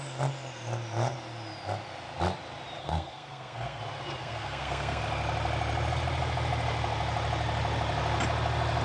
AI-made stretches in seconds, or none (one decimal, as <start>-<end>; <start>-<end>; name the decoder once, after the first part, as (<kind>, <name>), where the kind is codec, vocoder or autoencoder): 2.8-3.8 (codec, SNAC); 4.2-5.0